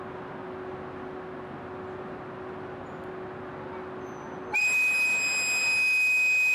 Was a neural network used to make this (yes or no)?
no